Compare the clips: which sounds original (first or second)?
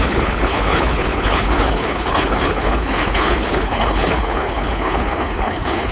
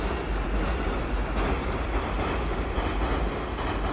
second